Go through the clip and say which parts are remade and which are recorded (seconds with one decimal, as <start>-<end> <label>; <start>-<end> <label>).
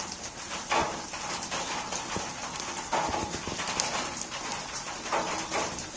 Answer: 0.0-3.1 recorded; 3.1-6.0 remade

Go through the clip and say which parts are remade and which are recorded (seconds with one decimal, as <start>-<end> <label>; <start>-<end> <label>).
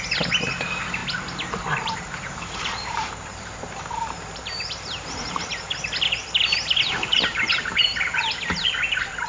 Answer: 0.0-1.0 recorded; 1.0-5.4 remade; 5.4-7.1 recorded; 7.1-7.7 remade; 7.7-9.3 recorded